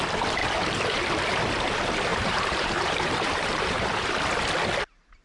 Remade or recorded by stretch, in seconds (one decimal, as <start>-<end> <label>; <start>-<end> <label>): 0.0-2.1 recorded; 2.1-4.2 remade; 4.2-5.2 recorded

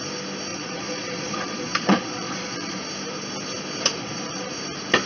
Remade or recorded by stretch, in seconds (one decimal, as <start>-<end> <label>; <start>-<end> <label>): 0.0-0.5 recorded; 0.5-2.8 remade; 2.8-4.0 recorded; 4.0-4.5 remade; 4.5-5.1 recorded

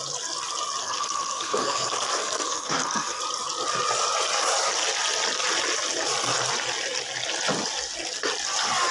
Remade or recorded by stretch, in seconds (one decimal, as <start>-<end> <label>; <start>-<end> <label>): 0.0-0.8 recorded; 0.8-3.2 remade; 3.2-8.9 recorded

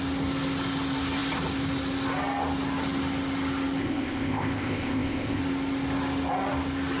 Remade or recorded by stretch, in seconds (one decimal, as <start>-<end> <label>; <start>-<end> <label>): 0.0-3.8 recorded; 3.8-5.4 remade; 5.4-7.0 recorded

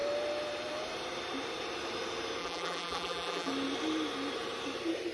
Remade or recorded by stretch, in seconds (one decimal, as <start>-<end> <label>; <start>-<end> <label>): 0.0-2.4 recorded; 2.4-3.5 remade; 3.5-5.1 recorded

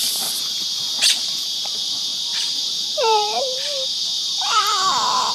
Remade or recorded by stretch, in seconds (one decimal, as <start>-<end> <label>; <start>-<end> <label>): 0.0-5.3 remade